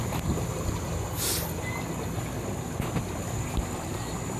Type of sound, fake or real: real